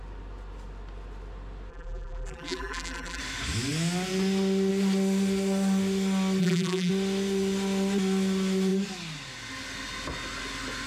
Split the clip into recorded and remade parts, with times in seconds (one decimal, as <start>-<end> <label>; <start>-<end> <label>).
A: 0.0-1.7 recorded; 1.7-3.2 remade; 3.2-6.4 recorded; 6.4-6.9 remade; 6.9-10.9 recorded